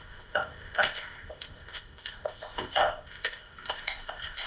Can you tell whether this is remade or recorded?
remade